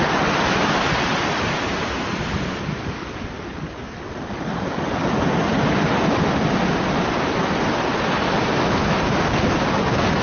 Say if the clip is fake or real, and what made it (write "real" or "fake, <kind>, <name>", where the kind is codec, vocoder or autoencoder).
real